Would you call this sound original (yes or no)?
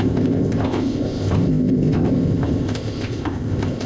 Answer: no